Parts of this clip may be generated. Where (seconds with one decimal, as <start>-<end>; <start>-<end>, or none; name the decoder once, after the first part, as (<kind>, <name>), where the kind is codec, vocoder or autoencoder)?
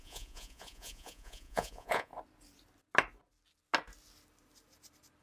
0.0-2.1 (vocoder, Vocos)